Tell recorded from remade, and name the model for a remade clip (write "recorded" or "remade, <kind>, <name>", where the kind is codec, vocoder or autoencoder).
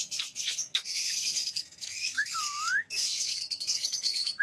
remade, codec, SNAC